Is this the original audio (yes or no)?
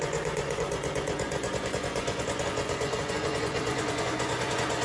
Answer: no